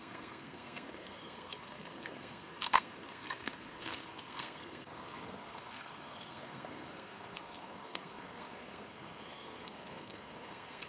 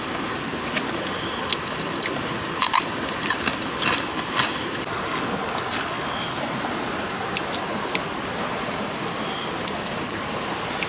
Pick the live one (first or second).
second